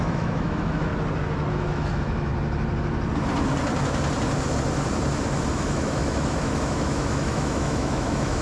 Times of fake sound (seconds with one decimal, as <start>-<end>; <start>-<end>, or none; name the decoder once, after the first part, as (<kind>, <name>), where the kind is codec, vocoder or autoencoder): 0.0-0.9 (autoencoder, DAC-VAE); 1.5-2.3; 5.5-8.4